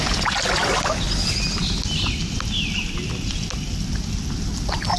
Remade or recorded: recorded